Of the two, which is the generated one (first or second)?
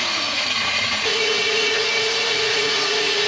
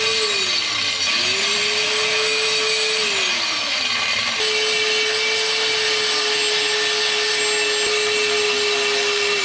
first